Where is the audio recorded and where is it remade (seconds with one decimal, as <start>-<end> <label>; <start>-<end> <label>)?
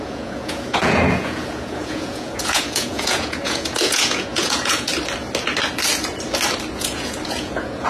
0.0-4.9 remade; 4.9-6.7 recorded; 6.7-7.9 remade